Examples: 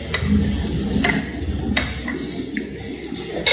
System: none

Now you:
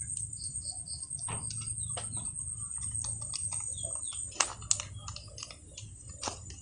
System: none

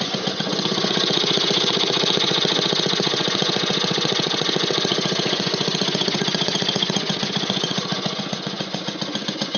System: vocoder, Vocos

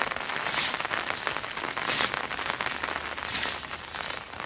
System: none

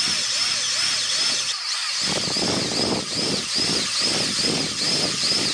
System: none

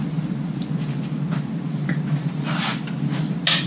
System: none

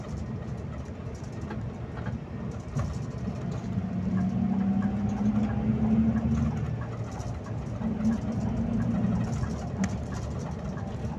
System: none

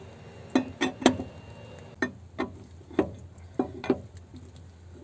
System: none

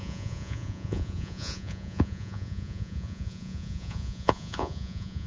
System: vocoder, Vocos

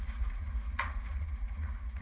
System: vocoder, Vocos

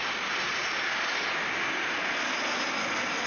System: none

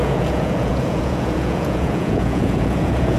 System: vocoder, Vocos